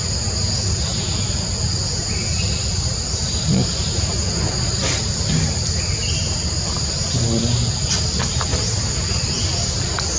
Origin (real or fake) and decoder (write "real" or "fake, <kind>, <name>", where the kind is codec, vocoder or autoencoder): real